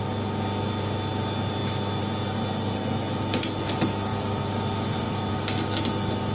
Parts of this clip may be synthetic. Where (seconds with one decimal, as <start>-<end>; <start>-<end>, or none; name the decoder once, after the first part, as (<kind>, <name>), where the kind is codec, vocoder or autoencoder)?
4.1-5.3 (vocoder, BigVGAN v2)